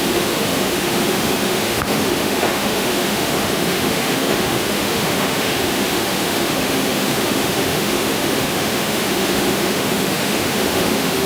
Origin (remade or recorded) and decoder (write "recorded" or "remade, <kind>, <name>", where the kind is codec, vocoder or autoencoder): remade, autoencoder, DAC-VAE